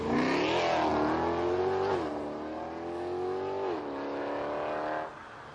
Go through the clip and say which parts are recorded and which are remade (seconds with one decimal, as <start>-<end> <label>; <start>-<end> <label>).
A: 0.0-5.5 recorded